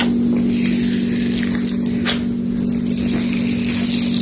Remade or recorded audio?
recorded